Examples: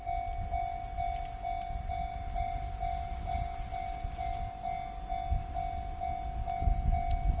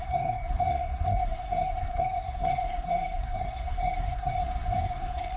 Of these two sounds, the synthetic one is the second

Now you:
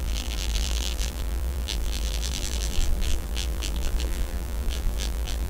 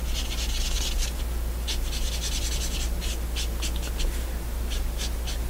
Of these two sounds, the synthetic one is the first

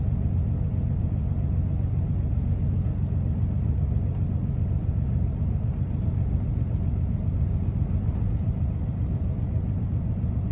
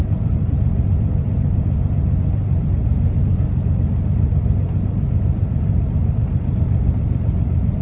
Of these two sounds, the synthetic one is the second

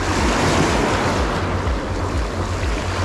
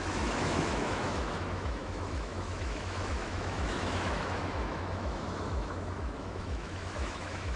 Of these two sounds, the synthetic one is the second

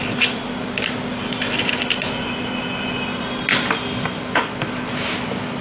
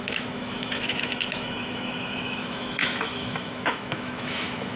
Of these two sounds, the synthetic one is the second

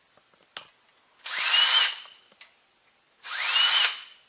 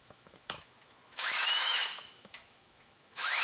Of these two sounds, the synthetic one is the second